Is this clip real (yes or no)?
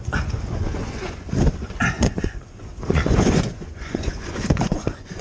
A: no